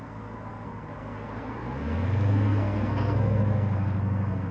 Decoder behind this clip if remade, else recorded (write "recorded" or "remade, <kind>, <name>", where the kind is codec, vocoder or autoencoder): remade, codec, SNAC